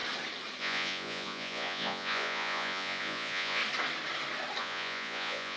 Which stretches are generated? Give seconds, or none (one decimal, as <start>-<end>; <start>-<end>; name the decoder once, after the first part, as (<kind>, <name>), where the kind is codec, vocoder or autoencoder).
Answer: 0.6-3.6 (vocoder, Vocos); 4.6-5.6